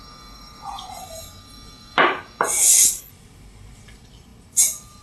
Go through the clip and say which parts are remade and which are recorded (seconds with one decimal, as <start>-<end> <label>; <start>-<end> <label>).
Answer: 0.0-2.6 recorded; 2.6-3.1 remade; 3.1-5.0 recorded